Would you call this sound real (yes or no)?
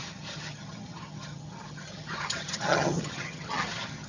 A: no